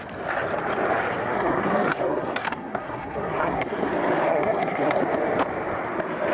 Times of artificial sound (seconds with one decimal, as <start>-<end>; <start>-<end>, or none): 1.2-3.9; 4.3-5.0